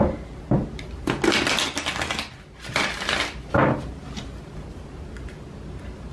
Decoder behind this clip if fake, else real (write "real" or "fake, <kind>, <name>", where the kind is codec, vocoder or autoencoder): real